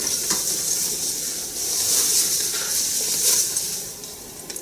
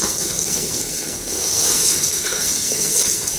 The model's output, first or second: second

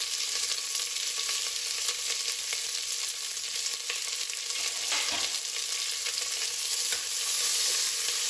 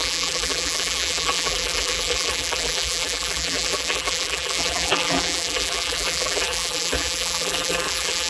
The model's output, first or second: second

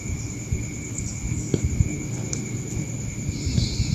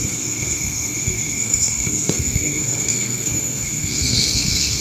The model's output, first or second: second